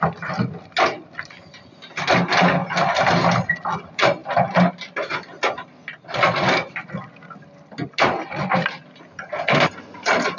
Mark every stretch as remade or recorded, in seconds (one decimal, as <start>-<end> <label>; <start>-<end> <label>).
0.0-10.4 recorded